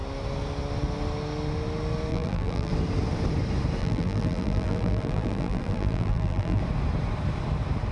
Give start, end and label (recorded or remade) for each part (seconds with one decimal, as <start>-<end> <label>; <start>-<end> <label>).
0.0-2.1 recorded; 2.1-2.7 remade; 2.7-3.8 recorded; 3.8-6.6 remade; 6.6-7.9 recorded